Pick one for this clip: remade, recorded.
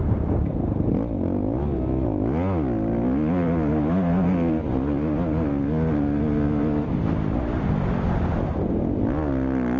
recorded